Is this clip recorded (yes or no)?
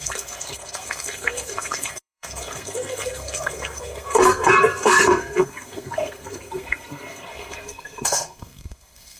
no